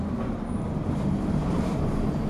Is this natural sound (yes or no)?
no